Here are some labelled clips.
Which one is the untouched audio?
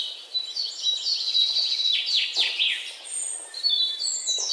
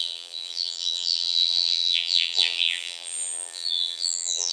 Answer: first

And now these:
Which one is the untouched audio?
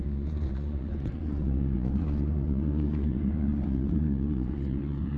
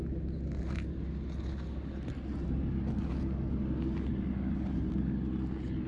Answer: second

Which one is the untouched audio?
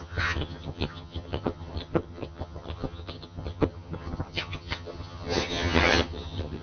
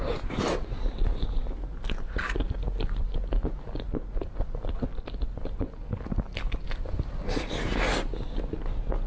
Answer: second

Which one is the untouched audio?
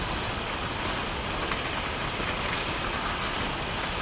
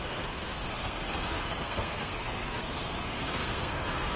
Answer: first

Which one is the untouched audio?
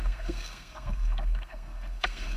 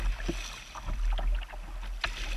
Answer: second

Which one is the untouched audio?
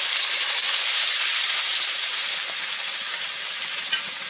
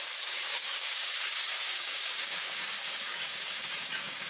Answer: first